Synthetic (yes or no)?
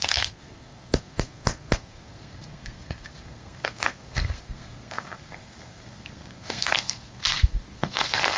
yes